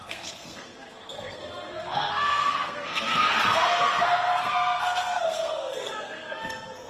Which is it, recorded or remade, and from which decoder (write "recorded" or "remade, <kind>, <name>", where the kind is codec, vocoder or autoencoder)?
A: remade, codec, SNAC